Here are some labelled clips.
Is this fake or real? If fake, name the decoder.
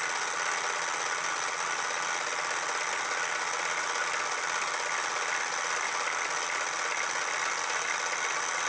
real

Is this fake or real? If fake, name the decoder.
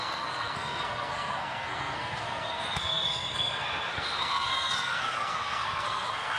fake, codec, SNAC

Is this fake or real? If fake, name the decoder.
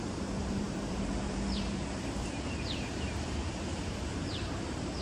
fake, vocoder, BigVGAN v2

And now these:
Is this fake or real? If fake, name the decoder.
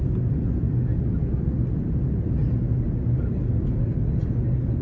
real